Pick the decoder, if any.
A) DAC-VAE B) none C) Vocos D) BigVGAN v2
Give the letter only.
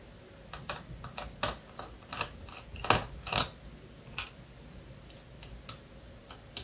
B